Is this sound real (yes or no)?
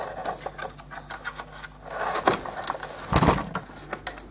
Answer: yes